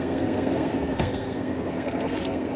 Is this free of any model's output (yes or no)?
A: no